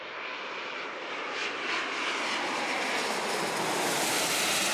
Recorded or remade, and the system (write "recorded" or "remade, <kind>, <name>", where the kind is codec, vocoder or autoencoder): recorded